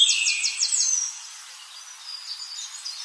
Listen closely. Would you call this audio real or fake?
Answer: real